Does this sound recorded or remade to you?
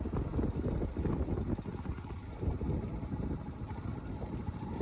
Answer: recorded